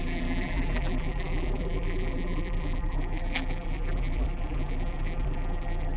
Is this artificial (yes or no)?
yes